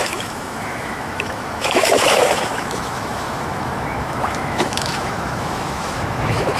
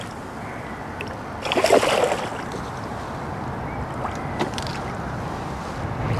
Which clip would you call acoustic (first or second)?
second